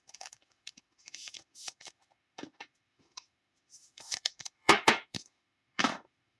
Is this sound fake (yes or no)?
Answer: yes